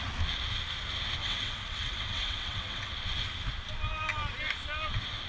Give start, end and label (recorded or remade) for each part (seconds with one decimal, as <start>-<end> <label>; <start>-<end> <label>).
0.0-1.2 recorded; 1.2-2.9 remade; 2.9-5.3 recorded